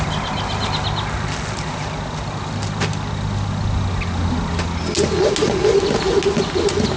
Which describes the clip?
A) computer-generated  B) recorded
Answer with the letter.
B